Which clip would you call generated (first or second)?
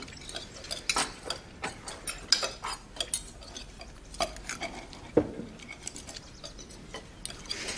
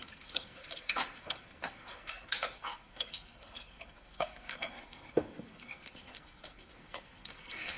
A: second